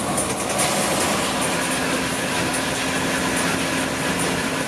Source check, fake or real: real